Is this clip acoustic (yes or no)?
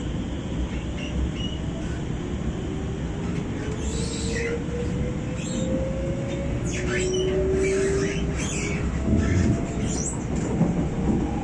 yes